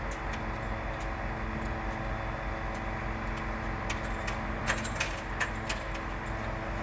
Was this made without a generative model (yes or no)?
yes